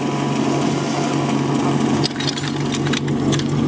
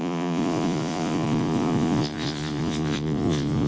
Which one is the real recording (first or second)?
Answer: first